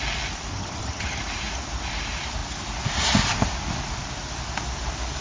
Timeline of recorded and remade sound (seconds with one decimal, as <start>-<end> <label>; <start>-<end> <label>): 0.0-0.5 recorded; 0.5-1.2 remade; 1.2-5.2 recorded